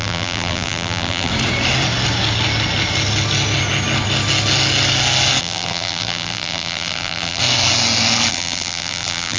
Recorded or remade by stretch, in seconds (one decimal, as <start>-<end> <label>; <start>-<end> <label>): 0.0-1.3 remade; 1.3-5.4 recorded; 5.4-7.4 remade; 7.4-8.3 recorded; 8.3-9.4 remade

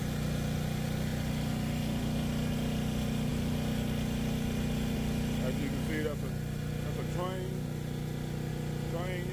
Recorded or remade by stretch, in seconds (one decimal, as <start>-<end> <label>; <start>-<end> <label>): 0.0-9.3 recorded

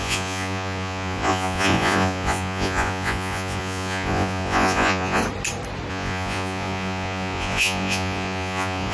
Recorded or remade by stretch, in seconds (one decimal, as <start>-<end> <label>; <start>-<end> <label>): 0.0-5.2 remade; 5.2-5.9 recorded; 5.9-8.9 remade

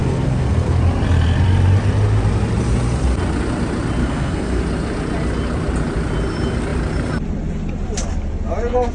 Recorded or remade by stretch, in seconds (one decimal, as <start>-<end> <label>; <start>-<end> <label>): 0.0-0.8 remade; 0.8-4.0 recorded; 4.0-4.6 remade; 4.6-8.9 recorded

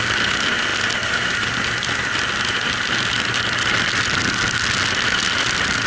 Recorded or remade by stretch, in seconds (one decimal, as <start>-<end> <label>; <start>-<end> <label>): 0.0-5.9 recorded

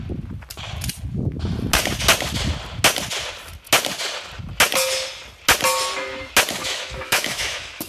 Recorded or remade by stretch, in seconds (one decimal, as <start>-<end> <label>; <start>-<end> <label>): 0.0-6.6 recorded; 6.6-7.9 remade

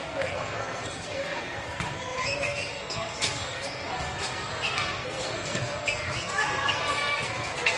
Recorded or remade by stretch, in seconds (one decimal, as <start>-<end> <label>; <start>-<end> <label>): 0.0-7.8 remade

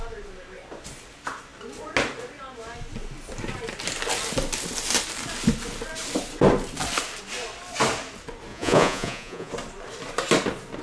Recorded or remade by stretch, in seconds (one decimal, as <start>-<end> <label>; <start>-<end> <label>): 0.0-8.5 recorded; 8.5-9.5 remade; 9.5-10.8 recorded